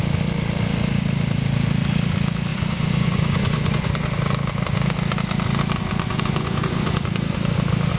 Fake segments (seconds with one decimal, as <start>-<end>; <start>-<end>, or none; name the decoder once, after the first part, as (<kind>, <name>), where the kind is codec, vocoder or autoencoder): 2.5-4.1 (vocoder, Vocos); 6.1-6.9